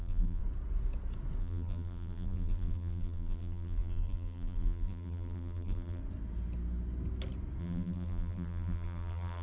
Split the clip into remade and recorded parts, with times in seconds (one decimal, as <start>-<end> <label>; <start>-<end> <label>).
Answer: 0.0-0.4 remade; 0.4-1.4 recorded; 1.4-6.0 remade; 6.0-7.6 recorded; 7.6-9.4 remade